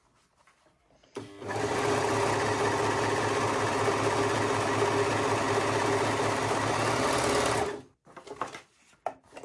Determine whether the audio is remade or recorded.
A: recorded